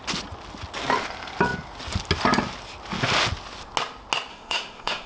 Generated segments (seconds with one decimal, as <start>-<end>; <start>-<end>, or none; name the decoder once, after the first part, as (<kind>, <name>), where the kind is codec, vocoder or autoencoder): 4.3-5.1 (autoencoder, DAC-VAE)